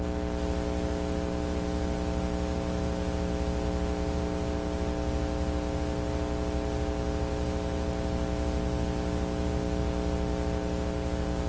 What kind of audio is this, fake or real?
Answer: real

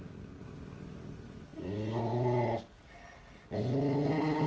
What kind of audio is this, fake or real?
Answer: real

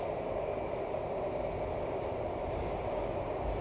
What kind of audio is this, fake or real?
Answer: real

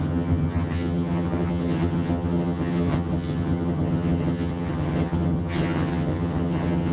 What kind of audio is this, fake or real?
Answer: fake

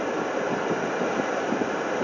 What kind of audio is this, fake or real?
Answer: real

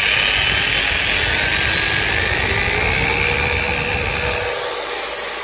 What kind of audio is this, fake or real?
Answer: real